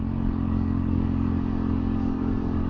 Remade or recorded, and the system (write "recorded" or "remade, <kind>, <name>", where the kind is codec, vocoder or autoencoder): remade, codec, DAC